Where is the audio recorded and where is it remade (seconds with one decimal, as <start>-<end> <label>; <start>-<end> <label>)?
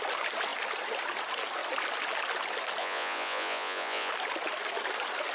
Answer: 0.0-2.8 recorded; 2.8-4.1 remade; 4.1-5.3 recorded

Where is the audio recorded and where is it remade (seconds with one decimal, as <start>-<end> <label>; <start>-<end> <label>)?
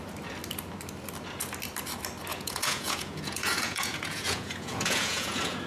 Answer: 0.0-2.3 recorded; 2.3-5.7 remade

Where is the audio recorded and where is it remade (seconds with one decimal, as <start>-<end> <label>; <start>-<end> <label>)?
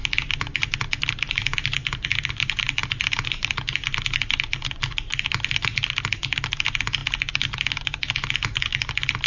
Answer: 0.0-9.3 recorded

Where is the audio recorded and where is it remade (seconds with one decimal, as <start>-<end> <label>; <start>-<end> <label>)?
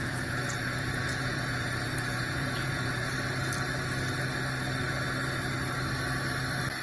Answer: 0.0-3.1 remade; 3.1-6.8 recorded